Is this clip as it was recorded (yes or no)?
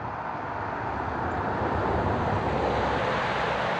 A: yes